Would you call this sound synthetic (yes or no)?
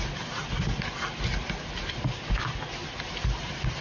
no